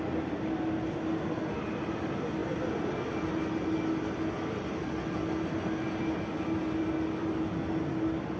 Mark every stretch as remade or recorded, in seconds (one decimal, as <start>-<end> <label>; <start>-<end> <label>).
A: 0.0-8.4 recorded